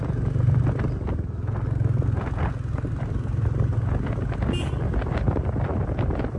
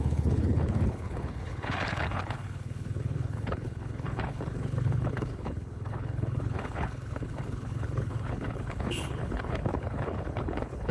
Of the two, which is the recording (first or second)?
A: first